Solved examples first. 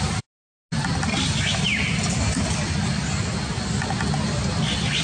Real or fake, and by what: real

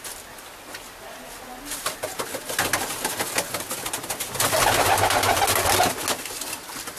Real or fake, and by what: real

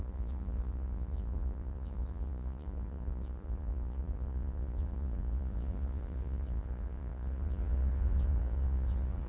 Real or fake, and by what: fake, vocoder, Vocos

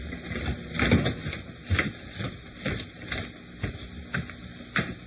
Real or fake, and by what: real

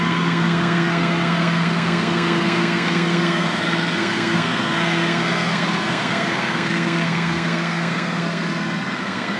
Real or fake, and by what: fake, codec, SNAC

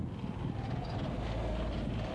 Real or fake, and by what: real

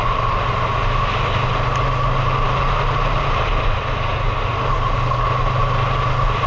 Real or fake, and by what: real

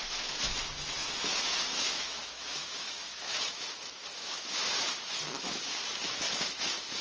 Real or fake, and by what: fake, autoencoder, DAC-VAE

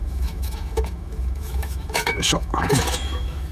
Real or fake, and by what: fake, autoencoder, DAC-VAE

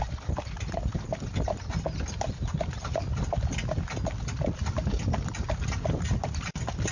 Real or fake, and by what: real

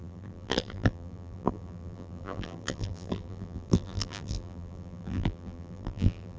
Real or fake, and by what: fake, vocoder, BigVGAN v2